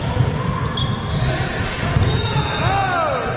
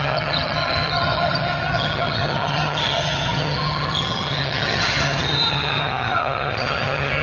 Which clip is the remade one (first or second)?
second